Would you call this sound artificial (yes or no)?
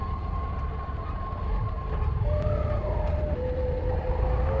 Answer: no